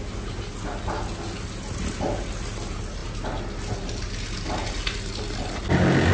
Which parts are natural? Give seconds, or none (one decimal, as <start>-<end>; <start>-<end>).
0.0-6.1